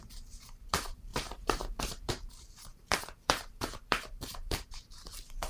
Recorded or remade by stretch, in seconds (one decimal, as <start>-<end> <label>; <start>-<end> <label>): 0.0-5.5 remade